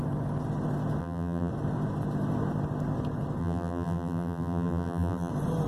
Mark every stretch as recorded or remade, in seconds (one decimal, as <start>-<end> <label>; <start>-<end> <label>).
0.0-1.0 recorded; 1.0-1.5 remade; 1.5-3.4 recorded; 3.4-5.3 remade; 5.3-5.7 recorded